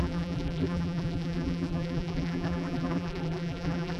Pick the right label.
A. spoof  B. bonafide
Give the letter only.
A